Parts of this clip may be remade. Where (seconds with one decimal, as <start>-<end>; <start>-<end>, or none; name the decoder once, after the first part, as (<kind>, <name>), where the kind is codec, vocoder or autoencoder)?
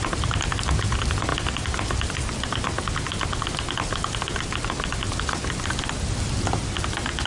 none